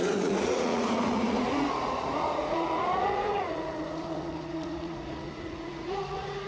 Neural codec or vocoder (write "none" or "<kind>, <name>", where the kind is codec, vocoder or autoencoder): vocoder, Vocos